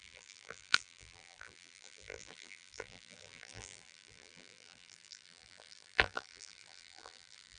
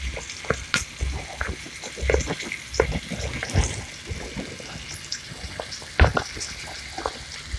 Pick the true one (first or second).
second